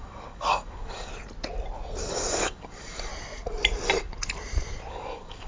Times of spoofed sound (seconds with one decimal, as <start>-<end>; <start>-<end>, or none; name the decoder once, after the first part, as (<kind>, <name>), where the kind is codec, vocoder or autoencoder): 0.0-1.1 (codec, DAC); 2.1-3.1; 4.9-5.5

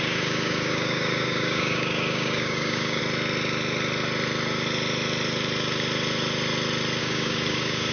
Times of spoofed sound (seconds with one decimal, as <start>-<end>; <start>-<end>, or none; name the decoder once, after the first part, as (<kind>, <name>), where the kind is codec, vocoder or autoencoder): 0.0-3.0 (codec, DAC); 7.0-7.9

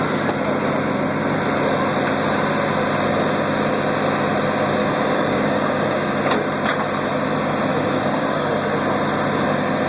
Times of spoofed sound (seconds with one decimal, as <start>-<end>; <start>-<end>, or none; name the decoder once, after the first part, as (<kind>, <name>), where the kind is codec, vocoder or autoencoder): 4.8-6.1 (codec, DAC); 7.7-8.5

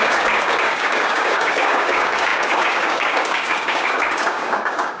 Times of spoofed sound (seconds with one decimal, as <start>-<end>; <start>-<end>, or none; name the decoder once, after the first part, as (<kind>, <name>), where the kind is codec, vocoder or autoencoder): 0.0-5.0 (codec, DAC)

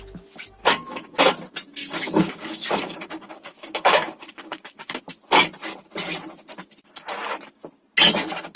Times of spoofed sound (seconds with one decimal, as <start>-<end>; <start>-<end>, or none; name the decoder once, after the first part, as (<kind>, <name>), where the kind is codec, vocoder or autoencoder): 0.6-1.2 (codec, DAC); 1.8-5.0

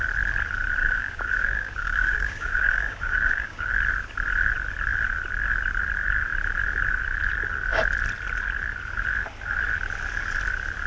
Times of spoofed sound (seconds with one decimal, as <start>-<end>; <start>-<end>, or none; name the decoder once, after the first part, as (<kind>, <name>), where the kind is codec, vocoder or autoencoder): 0.8-3.7 (codec, DAC)

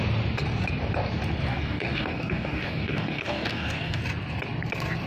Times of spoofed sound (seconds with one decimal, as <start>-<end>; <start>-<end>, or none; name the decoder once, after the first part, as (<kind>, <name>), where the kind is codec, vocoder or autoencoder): 1.5-4.0 (codec, DAC)

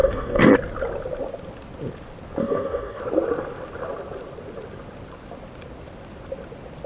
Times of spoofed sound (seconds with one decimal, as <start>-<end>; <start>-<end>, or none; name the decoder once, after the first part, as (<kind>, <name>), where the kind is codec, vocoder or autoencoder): 0.0-0.5 (codec, DAC); 2.4-3.0